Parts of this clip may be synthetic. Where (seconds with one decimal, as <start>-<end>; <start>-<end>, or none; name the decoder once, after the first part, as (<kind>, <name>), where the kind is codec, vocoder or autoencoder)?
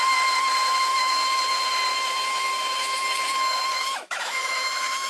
0.9-1.4 (autoencoder, DAC-VAE); 1.9-5.1